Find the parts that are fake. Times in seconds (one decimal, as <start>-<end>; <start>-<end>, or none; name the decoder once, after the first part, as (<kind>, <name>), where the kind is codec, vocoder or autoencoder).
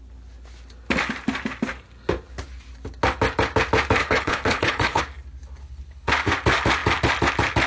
4.0-5.0 (codec, HILCodec); 5.6-6.1